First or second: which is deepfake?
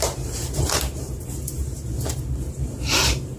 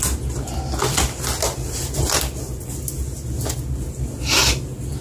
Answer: first